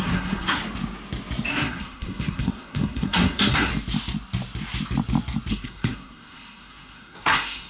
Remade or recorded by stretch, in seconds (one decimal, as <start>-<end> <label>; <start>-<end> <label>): 0.0-0.6 remade; 0.6-1.5 recorded; 1.5-3.7 remade; 3.7-5.5 recorded; 5.5-7.7 remade